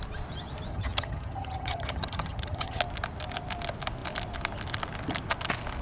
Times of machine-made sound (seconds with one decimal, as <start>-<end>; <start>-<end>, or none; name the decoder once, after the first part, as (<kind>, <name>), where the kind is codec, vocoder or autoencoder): 0.7-2.8 (vocoder, HiFi-GAN)